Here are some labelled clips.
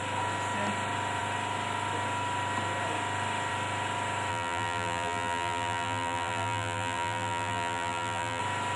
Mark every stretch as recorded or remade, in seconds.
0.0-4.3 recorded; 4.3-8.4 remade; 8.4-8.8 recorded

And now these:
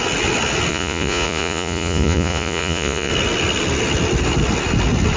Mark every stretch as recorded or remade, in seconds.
0.0-0.7 recorded; 0.7-3.1 remade; 3.1-5.2 recorded

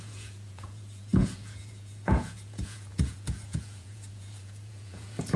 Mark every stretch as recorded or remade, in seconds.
0.0-5.4 remade

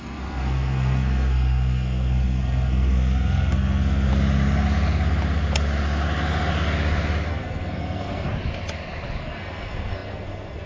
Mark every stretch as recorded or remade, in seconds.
0.0-4.1 remade; 4.1-7.3 recorded; 7.3-8.3 remade; 8.3-9.2 recorded; 9.2-10.7 remade